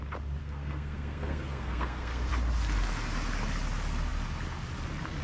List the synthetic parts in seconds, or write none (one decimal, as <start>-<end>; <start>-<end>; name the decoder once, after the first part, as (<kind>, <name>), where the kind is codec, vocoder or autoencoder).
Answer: 0.4-2.3 (codec, SNAC)